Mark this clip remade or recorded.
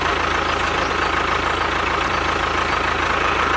recorded